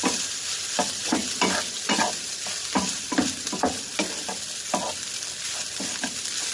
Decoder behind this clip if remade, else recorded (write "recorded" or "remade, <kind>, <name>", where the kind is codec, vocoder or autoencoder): recorded